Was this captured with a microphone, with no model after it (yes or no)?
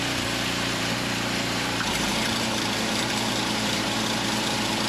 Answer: no